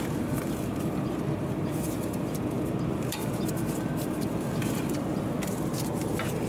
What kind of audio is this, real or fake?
fake